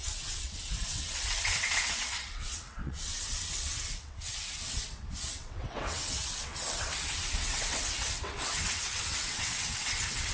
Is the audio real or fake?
fake